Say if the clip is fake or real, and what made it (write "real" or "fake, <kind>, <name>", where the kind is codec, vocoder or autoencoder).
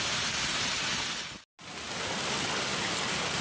real